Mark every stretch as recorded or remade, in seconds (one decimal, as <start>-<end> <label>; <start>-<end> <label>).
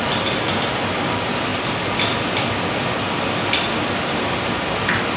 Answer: 0.0-5.2 recorded